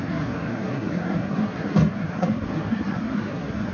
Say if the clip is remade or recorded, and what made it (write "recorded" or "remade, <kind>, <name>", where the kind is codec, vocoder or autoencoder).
remade, codec, SNAC